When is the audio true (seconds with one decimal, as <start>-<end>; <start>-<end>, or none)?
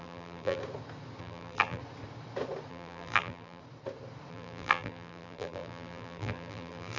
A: 0.6-1.2; 1.8-2.7; 3.6-4.3